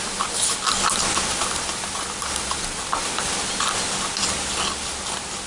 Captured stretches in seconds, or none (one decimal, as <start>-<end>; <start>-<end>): 0.0-1.3; 3.3-5.5